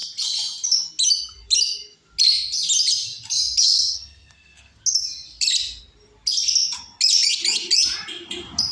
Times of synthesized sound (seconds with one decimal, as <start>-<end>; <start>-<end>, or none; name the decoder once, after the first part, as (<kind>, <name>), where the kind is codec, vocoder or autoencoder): 3.6-4.8 (codec, SNAC)